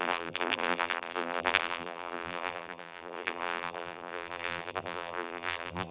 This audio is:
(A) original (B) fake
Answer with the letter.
B